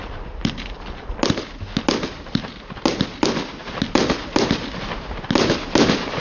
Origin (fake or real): real